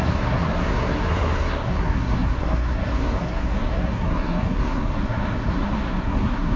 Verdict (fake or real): fake